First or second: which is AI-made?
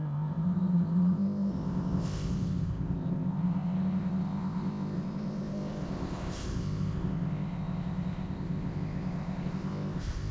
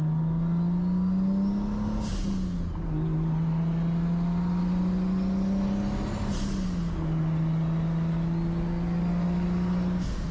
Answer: first